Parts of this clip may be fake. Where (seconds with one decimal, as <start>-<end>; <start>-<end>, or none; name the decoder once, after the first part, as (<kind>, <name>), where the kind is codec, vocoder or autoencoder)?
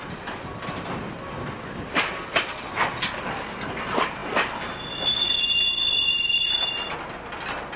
none